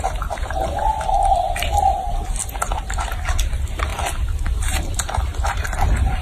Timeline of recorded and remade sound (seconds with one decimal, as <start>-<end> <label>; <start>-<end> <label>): 0.0-6.2 remade